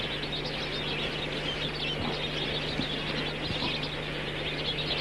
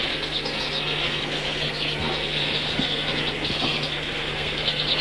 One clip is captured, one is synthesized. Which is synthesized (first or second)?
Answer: second